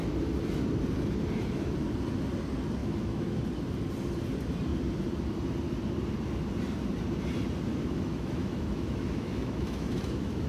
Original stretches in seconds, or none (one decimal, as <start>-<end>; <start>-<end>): 0.0-2.8; 3.4-7.7

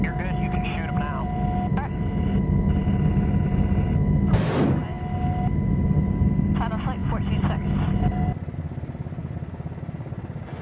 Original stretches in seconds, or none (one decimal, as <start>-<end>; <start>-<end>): 0.0-10.6

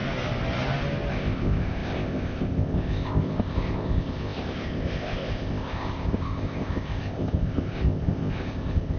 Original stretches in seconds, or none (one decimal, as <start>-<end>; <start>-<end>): 0.0-1.1

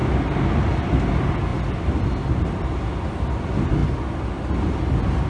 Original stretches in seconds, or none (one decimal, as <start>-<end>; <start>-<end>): 0.0-5.3

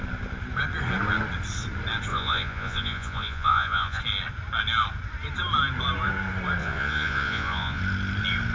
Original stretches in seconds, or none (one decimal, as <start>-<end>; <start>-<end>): 0.0-2.1; 4.0-6.6; 7.8-8.5